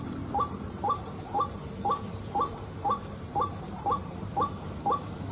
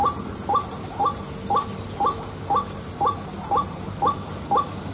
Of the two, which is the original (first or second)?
second